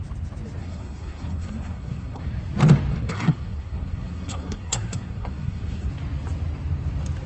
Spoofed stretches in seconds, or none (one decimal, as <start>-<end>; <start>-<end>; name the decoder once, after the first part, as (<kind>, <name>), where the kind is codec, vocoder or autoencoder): 0.6-2.3 (codec, SNAC); 2.9-5.9